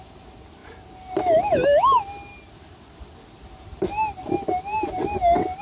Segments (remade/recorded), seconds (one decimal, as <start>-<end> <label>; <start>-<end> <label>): 0.0-5.6 recorded